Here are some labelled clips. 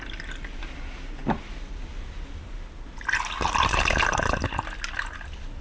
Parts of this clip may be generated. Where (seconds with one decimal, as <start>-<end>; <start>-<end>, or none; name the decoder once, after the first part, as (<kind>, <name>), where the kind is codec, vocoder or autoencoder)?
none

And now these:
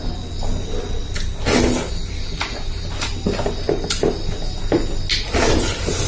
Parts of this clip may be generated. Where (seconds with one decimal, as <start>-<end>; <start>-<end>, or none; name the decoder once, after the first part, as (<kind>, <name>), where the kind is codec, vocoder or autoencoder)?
none

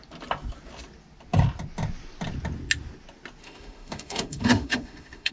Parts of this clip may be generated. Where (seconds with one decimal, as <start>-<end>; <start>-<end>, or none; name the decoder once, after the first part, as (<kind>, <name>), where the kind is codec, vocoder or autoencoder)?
3.4-5.3 (autoencoder, DAC-VAE)